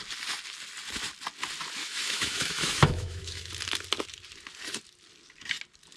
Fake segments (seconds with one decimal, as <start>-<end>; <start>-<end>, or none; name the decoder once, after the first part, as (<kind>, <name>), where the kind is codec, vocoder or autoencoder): 1.8-3.5 (autoencoder, DAC-VAE)